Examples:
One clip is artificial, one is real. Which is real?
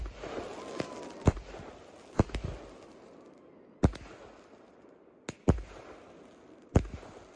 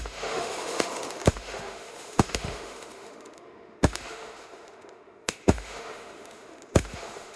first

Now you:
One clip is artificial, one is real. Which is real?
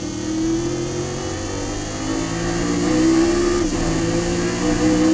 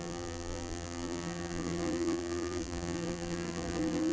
first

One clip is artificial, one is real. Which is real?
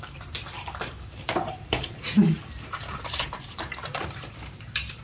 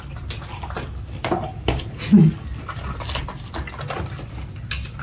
second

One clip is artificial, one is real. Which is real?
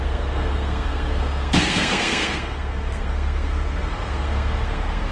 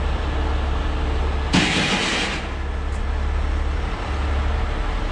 second